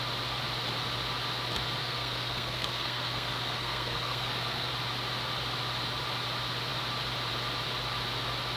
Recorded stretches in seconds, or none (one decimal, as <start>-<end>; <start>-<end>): 0.0-1.8; 4.7-8.6